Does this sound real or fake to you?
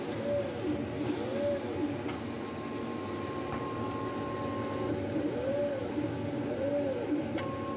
real